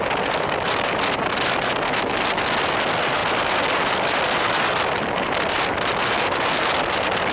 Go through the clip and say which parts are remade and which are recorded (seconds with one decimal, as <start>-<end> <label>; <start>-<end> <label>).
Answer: 0.0-7.3 recorded